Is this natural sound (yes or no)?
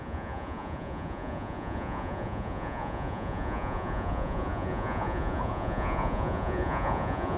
no